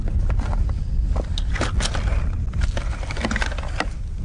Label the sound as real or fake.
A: real